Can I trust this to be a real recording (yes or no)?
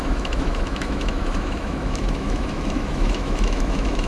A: no